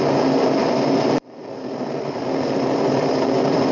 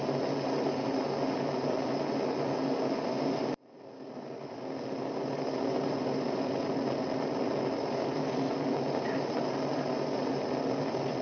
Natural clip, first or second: second